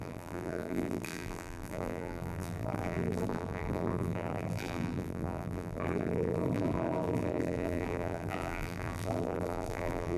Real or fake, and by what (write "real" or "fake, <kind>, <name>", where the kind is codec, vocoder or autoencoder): fake, vocoder, BigVGAN v2